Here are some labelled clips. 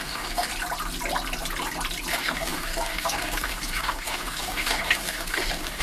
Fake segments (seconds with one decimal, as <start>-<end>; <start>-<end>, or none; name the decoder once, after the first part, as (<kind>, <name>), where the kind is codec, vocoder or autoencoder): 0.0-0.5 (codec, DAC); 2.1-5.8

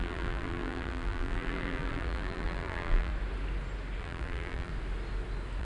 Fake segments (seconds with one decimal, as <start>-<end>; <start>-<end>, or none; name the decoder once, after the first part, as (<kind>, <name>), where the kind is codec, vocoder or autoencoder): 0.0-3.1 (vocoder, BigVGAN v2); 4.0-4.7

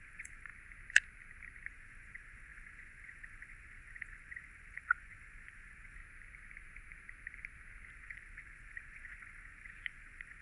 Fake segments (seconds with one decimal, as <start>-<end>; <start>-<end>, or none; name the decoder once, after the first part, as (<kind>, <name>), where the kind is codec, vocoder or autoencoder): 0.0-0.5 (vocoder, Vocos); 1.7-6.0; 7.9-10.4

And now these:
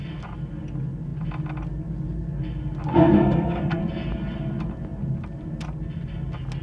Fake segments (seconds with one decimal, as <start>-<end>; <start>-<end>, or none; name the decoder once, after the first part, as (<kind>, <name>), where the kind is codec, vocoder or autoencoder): 2.9-3.8 (codec, SNAC)